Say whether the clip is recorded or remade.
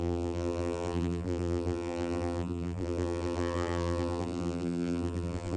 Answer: remade